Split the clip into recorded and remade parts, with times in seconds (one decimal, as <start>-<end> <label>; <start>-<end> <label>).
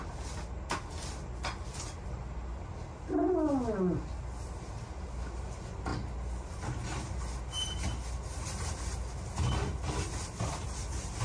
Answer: 0.0-11.2 recorded